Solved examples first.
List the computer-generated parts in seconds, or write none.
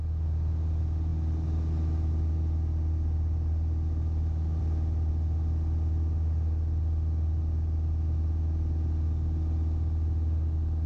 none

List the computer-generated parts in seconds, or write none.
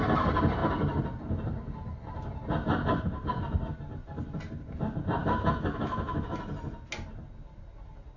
5.2-6.4 (autoencoder, DAC-VAE)